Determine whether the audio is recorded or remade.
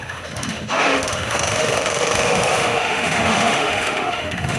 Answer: remade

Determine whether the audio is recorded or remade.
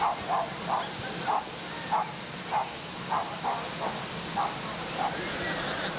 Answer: recorded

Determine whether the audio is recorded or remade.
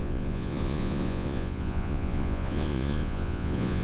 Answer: remade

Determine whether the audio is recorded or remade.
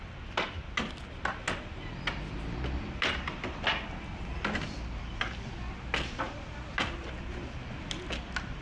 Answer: recorded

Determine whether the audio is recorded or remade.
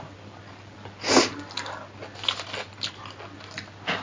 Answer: recorded